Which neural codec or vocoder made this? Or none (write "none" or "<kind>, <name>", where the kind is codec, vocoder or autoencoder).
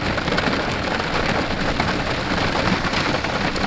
none